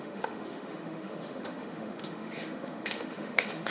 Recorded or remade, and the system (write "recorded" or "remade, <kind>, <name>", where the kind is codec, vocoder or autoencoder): remade, autoencoder, DAC-VAE